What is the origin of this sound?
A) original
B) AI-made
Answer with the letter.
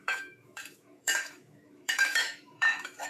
B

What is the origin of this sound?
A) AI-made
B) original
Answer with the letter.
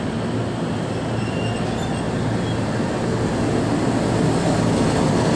B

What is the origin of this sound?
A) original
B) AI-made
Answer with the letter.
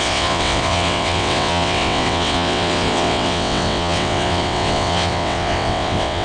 B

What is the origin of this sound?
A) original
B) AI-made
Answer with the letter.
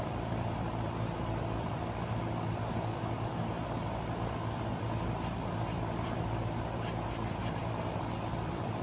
B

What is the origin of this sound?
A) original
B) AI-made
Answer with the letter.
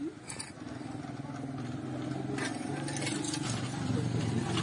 A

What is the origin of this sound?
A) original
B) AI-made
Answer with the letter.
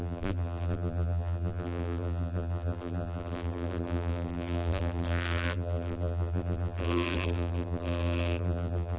B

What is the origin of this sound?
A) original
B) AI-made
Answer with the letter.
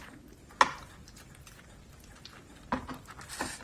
A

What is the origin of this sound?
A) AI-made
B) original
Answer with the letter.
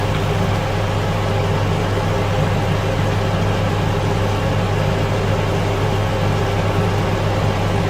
B